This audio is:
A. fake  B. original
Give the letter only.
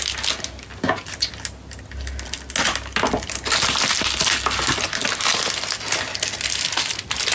B